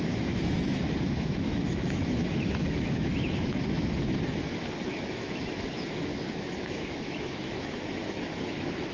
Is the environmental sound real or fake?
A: fake